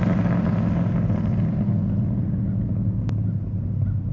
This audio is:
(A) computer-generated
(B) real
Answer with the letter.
B